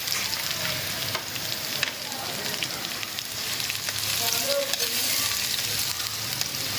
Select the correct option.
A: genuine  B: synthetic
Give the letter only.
A